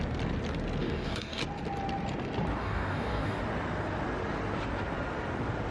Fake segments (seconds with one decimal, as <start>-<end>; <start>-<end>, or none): 0.8-1.4; 2.6-3.4